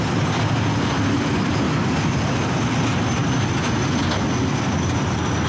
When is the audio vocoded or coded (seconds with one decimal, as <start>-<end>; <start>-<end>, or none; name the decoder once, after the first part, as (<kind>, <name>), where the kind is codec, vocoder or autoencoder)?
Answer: none